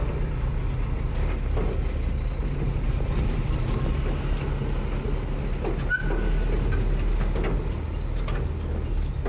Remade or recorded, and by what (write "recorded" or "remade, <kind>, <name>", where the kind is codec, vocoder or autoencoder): recorded